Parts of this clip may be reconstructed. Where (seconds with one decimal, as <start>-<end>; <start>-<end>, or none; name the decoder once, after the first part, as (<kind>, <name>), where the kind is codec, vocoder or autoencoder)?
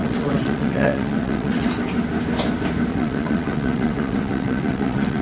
0.0-1.7 (vocoder, WaveNeXt); 2.9-5.2